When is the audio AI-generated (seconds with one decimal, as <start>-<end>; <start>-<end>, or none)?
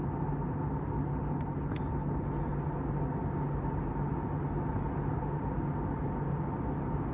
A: none